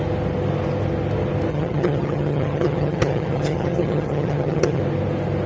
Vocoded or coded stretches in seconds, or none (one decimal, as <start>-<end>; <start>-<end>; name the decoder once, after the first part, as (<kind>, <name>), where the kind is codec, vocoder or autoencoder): 1.5-4.8 (vocoder, HiFi-GAN)